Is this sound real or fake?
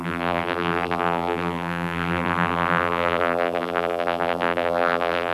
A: fake